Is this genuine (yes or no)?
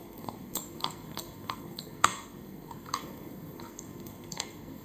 no